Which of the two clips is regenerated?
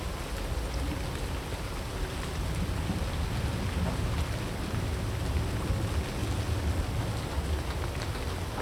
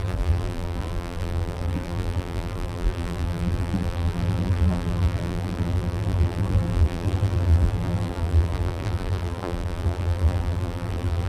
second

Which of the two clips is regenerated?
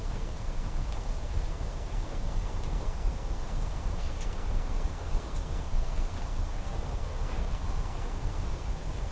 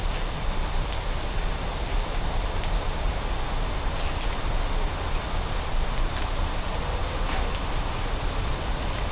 first